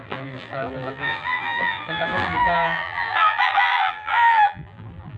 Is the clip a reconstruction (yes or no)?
yes